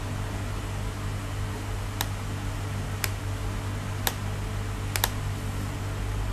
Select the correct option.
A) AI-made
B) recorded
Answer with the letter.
B